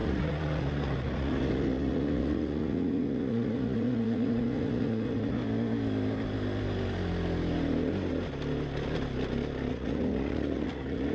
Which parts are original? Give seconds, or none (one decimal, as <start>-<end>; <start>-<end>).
5.4-9.7